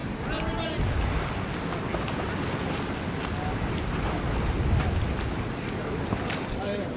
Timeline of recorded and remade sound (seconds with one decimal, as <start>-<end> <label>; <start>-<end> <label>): 0.0-7.0 recorded